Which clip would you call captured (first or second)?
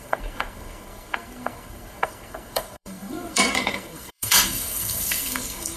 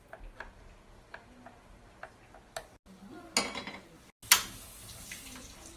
second